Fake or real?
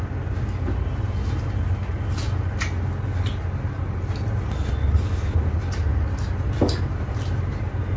real